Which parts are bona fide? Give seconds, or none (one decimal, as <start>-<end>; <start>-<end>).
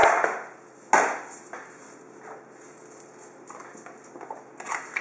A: 0.0-5.0